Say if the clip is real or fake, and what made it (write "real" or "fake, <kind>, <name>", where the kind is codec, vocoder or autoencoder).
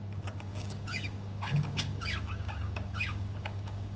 fake, codec, DAC